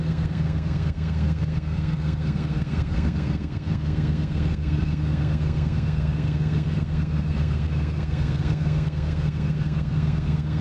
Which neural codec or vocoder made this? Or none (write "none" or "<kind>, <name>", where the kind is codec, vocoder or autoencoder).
codec, SNAC